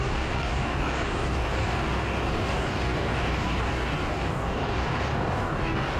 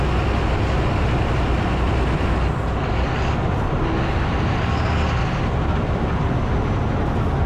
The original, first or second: second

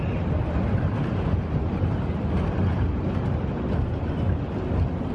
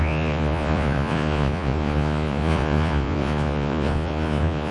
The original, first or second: first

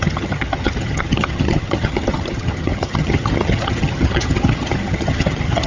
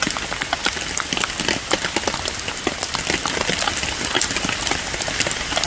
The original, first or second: second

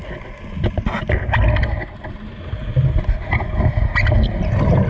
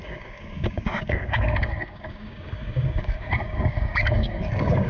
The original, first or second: first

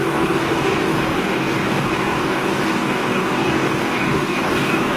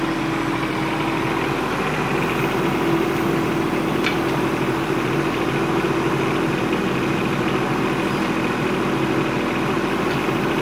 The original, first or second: second